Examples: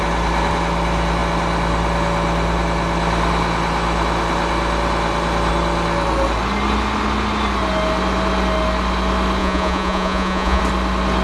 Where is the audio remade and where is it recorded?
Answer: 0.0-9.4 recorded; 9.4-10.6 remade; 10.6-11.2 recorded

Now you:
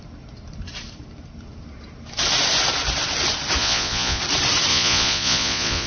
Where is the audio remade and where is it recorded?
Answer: 0.0-3.6 recorded; 3.6-4.2 remade; 4.2-4.7 recorded; 4.7-5.9 remade